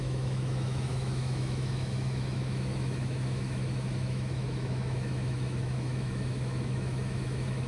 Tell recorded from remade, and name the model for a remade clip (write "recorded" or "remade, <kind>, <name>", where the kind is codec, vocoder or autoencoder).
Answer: remade, autoencoder, DAC-VAE